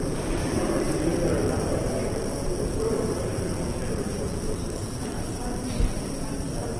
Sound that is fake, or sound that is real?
fake